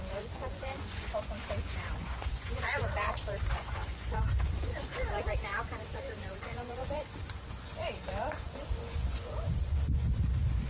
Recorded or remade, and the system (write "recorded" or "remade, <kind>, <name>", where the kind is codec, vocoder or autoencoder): remade, vocoder, Vocos